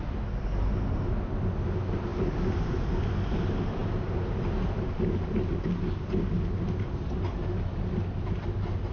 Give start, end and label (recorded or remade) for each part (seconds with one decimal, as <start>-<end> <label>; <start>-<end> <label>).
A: 0.0-8.9 recorded